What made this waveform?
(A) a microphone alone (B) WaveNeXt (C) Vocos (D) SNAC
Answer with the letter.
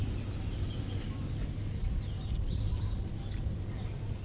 A